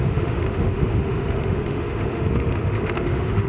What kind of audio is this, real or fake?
fake